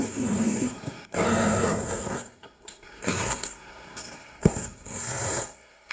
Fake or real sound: fake